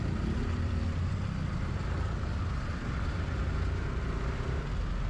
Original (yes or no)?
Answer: no